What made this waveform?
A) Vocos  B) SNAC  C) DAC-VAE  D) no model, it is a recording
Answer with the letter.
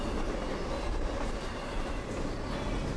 D